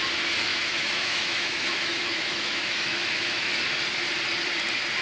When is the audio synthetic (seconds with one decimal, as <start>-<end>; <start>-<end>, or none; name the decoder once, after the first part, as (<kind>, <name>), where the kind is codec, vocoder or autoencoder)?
0.5-3.5 (autoencoder, DAC-VAE)

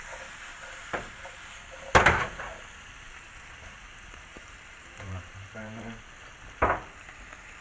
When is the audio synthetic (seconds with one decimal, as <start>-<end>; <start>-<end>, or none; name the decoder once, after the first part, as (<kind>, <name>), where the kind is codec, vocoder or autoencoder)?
0.5-1.3 (vocoder, BigVGAN v2); 4.3-6.0

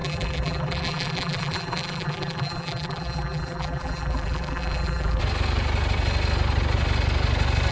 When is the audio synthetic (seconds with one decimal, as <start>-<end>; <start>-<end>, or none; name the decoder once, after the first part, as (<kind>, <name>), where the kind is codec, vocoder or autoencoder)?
0.0-5.2 (vocoder, BigVGAN v2)

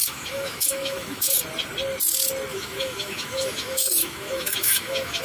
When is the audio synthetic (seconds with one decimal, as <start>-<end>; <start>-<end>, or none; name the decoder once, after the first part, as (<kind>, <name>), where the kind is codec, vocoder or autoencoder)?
0.0-1.4 (autoencoder, DAC-VAE); 2.5-5.2

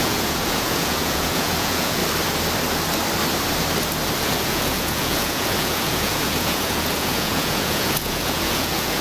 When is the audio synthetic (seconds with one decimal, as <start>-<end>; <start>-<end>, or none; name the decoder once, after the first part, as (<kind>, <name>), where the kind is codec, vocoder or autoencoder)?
0.0-2.0 (vocoder, Vocos); 4.2-9.0